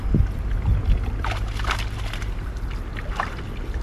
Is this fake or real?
real